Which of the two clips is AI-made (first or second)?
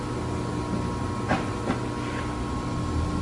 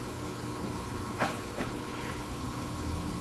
second